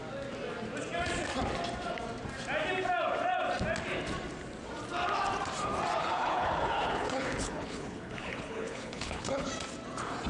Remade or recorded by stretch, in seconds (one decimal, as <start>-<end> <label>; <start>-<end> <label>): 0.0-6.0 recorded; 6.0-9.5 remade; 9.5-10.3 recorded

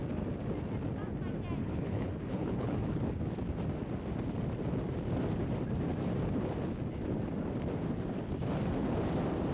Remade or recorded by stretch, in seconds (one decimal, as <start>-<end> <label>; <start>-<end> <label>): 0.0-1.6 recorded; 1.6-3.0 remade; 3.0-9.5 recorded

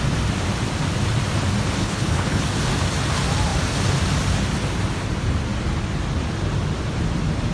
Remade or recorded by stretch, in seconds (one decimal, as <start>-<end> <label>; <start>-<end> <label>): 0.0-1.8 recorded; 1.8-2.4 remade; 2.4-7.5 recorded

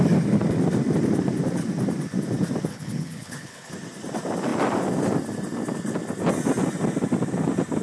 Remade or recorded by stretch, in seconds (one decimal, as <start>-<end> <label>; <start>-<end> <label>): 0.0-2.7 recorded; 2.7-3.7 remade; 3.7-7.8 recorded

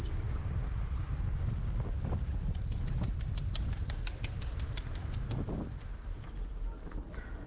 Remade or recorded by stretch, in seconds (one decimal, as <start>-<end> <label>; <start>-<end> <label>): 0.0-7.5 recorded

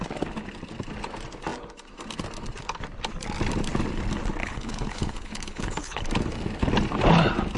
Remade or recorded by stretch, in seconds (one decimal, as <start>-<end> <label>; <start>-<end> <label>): 0.0-4.4 recorded; 4.4-6.0 remade; 6.0-7.6 recorded

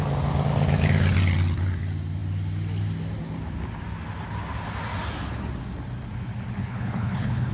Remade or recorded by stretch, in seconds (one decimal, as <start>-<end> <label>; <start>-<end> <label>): 0.0-6.6 recorded; 6.6-7.5 remade